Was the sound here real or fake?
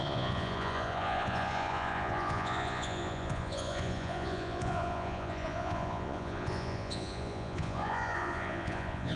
fake